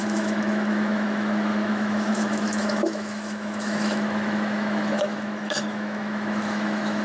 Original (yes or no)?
no